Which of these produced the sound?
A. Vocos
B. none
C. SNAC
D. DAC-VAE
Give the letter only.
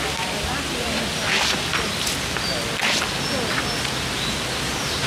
B